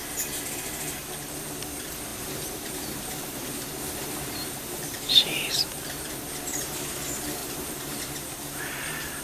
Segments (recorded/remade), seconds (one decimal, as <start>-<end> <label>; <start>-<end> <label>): 0.0-2.1 recorded; 2.1-5.9 remade; 5.9-7.4 recorded; 7.4-8.6 remade; 8.6-9.2 recorded